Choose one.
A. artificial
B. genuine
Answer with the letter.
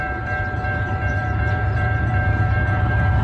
A